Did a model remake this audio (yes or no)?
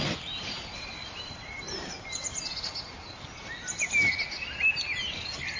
no